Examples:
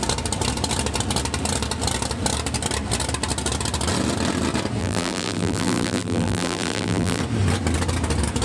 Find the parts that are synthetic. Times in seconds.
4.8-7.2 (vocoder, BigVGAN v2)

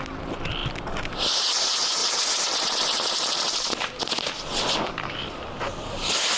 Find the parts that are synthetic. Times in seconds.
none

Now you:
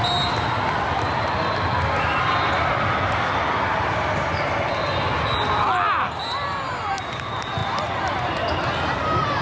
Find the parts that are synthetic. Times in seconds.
7.6-8.1 (vocoder, BigVGAN v2)